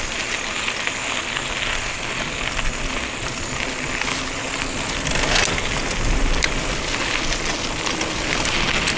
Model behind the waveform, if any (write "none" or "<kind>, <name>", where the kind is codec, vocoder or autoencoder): none